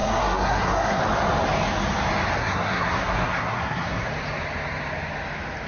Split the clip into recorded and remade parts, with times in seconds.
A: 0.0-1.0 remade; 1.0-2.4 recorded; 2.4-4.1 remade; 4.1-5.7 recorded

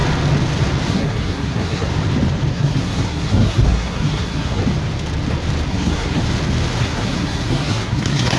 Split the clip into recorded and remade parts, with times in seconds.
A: 0.0-0.9 recorded; 0.9-1.9 remade; 1.9-2.5 recorded; 2.5-4.6 remade; 4.6-5.7 recorded; 5.7-6.2 remade; 6.2-6.8 recorded; 6.8-8.4 remade

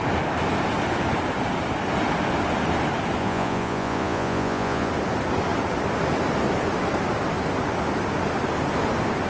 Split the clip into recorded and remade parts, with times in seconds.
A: 0.0-3.2 recorded; 3.2-4.9 remade; 4.9-9.3 recorded